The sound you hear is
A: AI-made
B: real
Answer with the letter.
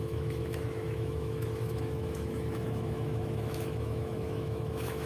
A